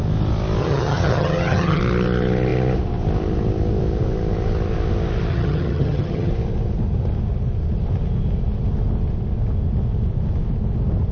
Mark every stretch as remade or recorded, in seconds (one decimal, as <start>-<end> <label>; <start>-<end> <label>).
0.0-0.6 recorded; 0.6-1.8 remade; 1.8-5.3 recorded; 5.3-6.3 remade; 6.3-11.1 recorded